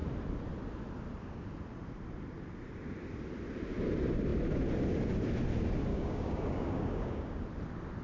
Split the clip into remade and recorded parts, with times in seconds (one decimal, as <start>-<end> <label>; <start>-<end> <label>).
0.0-5.9 recorded; 5.9-7.4 remade; 7.4-8.0 recorded